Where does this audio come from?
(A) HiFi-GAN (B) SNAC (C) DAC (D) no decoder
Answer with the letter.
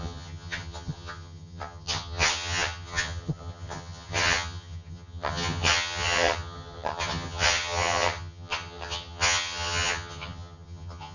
A